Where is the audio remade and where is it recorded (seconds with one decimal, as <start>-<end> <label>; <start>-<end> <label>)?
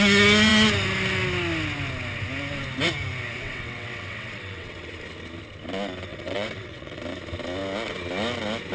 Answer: 0.0-3.4 recorded; 3.4-4.9 remade; 4.9-6.1 recorded; 6.1-7.0 remade; 7.0-8.7 recorded